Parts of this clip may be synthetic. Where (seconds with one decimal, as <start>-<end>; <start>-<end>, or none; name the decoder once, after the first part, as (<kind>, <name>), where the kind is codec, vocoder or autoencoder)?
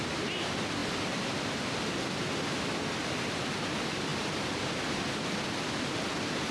none